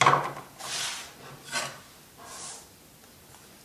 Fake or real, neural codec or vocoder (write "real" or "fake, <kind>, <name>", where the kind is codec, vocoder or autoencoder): real